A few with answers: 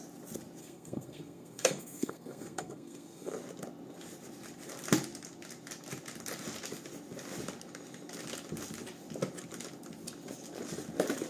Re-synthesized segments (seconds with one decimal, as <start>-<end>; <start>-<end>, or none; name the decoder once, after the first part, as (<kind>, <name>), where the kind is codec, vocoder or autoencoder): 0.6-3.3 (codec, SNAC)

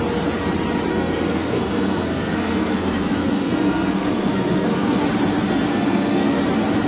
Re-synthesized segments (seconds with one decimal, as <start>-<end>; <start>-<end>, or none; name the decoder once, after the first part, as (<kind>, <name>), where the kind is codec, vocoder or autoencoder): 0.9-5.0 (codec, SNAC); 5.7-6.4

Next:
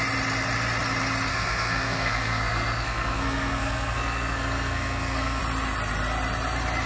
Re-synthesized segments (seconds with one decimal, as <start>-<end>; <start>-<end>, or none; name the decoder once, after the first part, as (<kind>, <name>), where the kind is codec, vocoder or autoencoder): 1.3-5.4 (codec, SNAC)